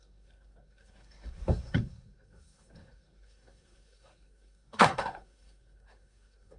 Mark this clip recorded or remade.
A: remade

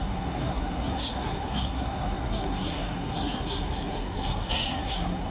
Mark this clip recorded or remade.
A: remade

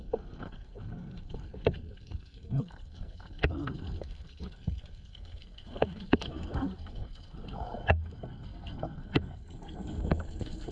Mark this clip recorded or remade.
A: remade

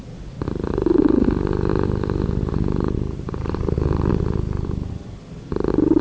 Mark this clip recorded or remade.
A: recorded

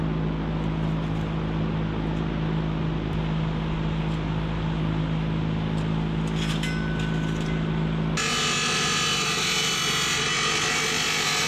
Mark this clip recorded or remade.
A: recorded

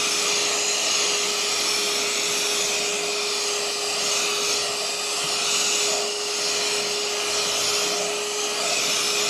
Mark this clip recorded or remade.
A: recorded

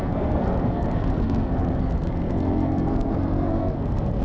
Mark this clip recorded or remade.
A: remade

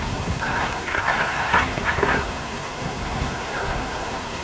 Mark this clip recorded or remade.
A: remade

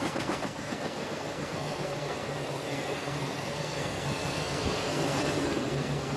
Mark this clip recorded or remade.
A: remade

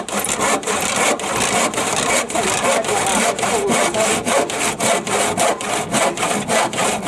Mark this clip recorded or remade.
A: recorded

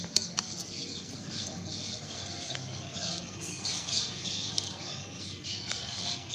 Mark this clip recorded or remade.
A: remade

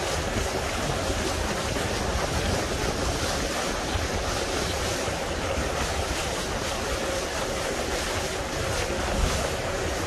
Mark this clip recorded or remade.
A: recorded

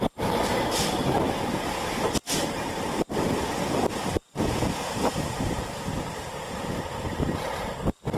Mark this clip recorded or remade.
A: recorded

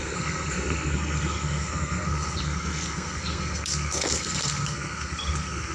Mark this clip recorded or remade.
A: remade